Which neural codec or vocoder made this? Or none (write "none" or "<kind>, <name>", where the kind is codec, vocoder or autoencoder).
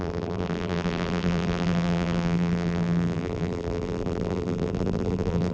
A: vocoder, BigVGAN v2